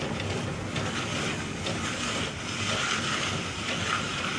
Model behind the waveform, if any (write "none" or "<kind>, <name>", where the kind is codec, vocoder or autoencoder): vocoder, BigVGAN v2